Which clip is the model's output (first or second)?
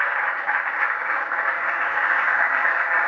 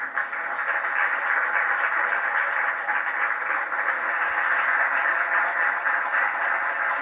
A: first